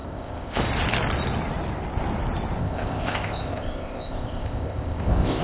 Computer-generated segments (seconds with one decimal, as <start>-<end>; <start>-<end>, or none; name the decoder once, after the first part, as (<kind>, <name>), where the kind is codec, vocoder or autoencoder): 0.0-0.6 (codec, ZipCodec); 2.6-5.4